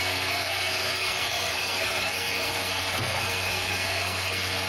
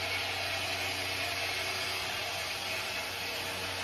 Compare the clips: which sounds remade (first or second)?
first